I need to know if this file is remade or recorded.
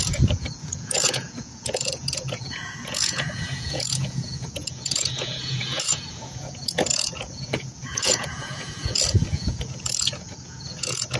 remade